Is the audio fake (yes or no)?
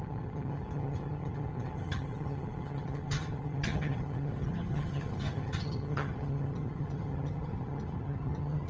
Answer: yes